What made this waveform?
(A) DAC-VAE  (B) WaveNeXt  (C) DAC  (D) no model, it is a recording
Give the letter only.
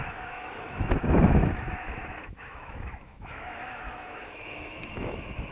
A